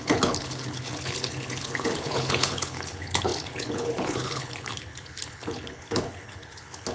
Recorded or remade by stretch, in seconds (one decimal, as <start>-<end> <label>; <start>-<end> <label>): 0.0-6.9 remade